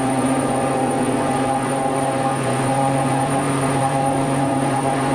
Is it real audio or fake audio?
fake